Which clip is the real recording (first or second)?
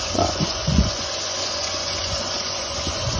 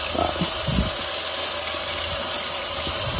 second